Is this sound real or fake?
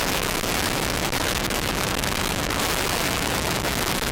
fake